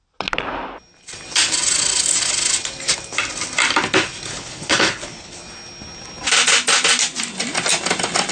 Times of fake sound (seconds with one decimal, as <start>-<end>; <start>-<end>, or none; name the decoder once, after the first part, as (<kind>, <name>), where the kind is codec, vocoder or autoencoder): 4.3-5.4 (codec, HILCodec)